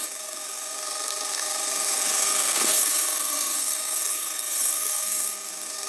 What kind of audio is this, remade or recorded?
remade